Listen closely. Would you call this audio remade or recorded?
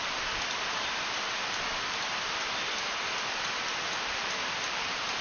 remade